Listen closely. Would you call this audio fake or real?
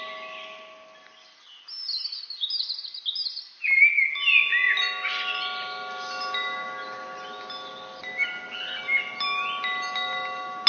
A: real